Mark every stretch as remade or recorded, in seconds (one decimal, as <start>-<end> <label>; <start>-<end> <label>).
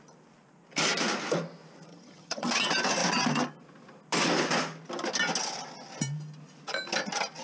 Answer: 0.0-1.9 recorded; 1.9-2.5 remade; 2.5-7.4 recorded